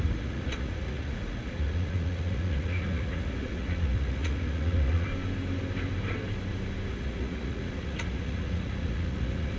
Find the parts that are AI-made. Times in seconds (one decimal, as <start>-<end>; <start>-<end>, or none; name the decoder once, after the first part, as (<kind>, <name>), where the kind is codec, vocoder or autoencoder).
0.0-5.1 (vocoder, Vocos); 6.9-9.6